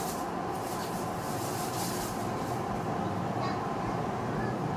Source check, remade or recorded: recorded